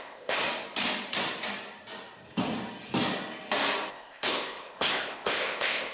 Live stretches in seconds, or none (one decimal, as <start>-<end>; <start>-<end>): 0.4-3.9